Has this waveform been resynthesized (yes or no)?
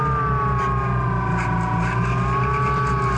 no